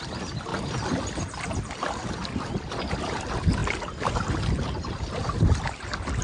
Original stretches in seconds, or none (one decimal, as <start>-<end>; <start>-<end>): 0.0-6.2